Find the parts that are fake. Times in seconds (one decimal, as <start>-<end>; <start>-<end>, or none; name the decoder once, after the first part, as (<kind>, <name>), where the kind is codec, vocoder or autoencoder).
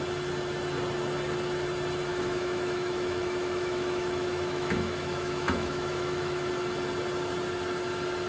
2.1-6.5 (autoencoder, DAC-VAE)